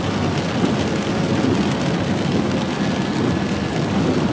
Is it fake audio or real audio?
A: real